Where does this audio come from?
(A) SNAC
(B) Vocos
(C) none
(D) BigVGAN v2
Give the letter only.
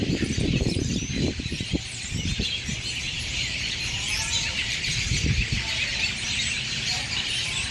D